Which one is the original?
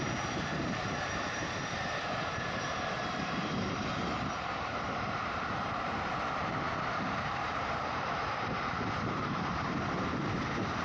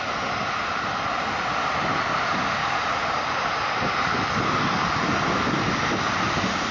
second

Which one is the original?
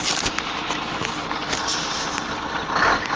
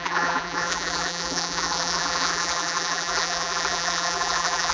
first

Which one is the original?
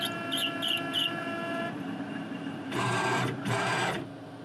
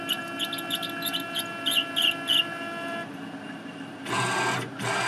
second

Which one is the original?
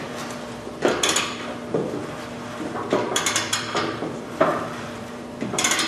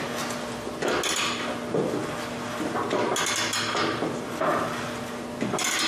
second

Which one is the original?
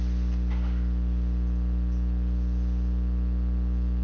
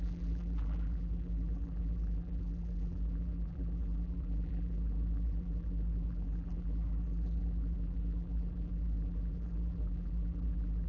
first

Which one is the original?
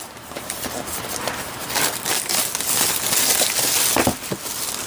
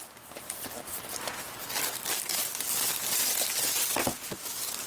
second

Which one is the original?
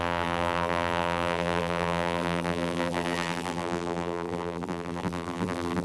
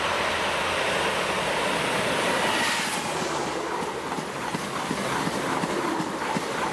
second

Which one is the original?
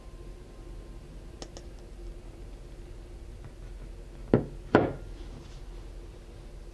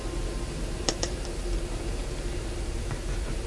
first